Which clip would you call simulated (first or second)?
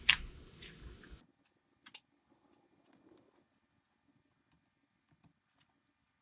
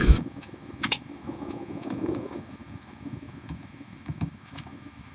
second